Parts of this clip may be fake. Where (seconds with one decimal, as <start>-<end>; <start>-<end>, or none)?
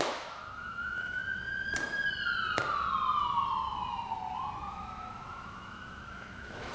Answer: 0.0-1.2; 4.7-6.7